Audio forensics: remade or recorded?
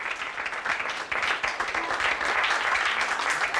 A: recorded